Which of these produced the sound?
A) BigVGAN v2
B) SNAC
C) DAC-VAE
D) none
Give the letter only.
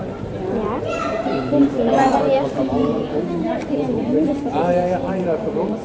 A